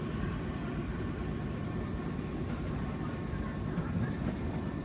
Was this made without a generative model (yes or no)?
yes